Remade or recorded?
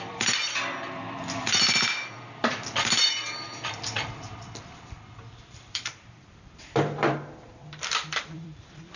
remade